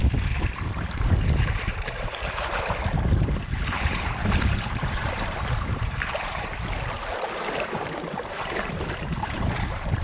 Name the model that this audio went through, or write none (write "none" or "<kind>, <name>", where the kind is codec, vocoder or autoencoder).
vocoder, BigVGAN v2